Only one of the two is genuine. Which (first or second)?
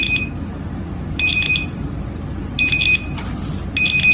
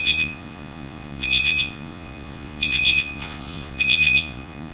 first